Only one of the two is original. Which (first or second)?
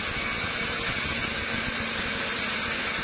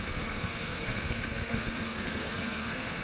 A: first